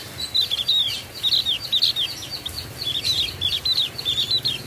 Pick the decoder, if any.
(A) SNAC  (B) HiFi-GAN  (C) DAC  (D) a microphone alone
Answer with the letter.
D